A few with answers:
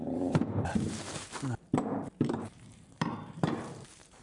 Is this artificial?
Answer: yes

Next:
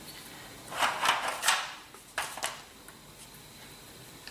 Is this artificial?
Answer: no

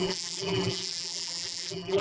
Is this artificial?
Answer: yes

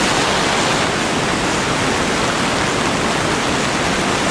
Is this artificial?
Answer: no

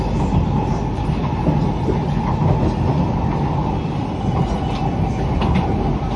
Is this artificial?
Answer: no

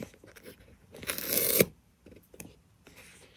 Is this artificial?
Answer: yes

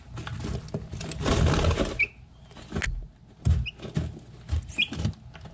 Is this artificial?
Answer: no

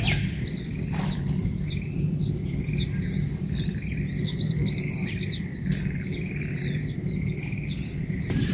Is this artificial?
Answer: yes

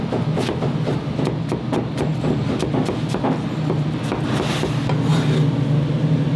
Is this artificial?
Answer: no